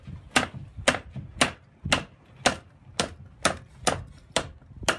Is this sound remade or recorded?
recorded